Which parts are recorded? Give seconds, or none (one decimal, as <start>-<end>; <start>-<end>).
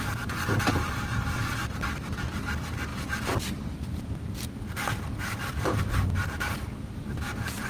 none